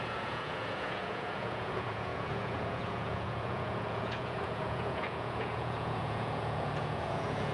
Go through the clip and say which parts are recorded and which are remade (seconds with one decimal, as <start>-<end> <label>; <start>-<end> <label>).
0.0-7.5 remade